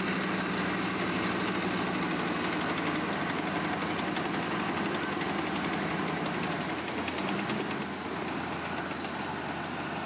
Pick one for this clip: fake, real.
real